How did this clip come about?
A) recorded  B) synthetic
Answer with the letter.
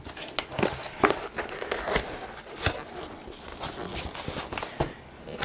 A